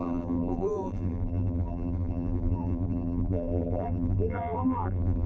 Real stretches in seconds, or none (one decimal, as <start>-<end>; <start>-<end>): none